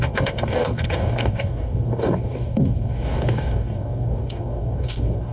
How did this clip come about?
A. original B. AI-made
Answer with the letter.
B